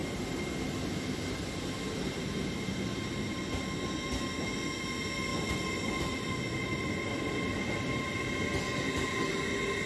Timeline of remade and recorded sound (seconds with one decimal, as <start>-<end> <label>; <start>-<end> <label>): 0.0-9.9 recorded